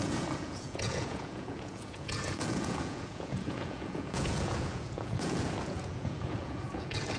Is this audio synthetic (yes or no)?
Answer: yes